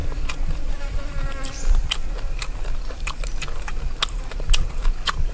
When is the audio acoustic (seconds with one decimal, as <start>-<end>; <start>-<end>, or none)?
0.0-0.7; 1.8-5.3